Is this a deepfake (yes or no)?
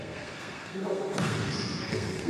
yes